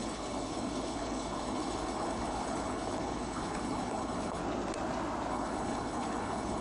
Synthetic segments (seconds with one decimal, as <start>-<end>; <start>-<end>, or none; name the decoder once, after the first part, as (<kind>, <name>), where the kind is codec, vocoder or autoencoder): 0.0-4.4 (codec, HILCodec); 5.3-6.6